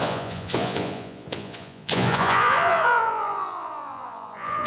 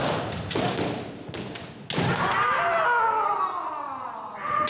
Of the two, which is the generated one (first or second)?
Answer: first